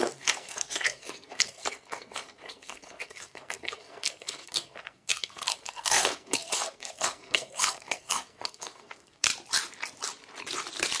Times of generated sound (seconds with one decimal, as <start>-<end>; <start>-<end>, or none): 0.0-9.3